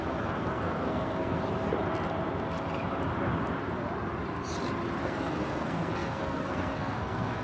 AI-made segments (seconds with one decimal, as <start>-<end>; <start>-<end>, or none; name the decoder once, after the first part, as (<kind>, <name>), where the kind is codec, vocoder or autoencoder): 0.0-1.4 (codec, SNAC); 5.0-7.4